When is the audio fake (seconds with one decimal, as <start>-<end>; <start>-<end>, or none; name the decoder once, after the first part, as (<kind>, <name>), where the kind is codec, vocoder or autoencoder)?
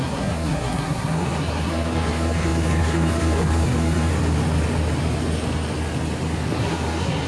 0.0-4.1 (codec, SNAC); 6.6-7.3